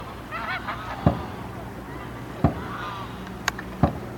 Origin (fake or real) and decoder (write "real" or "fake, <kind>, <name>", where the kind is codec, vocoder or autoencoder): real